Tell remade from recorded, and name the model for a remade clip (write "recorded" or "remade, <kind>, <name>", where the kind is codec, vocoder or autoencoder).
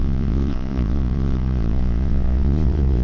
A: remade, vocoder, Vocos